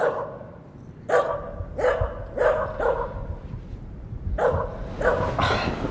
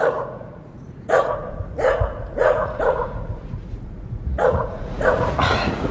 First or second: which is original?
first